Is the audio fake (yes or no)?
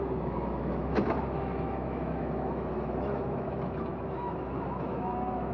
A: yes